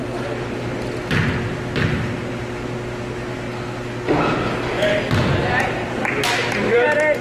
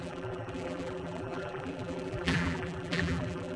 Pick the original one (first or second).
first